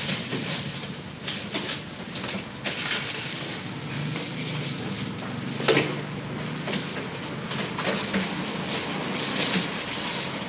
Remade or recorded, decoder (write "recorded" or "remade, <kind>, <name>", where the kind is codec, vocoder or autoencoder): recorded